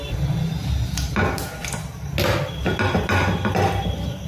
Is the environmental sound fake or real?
real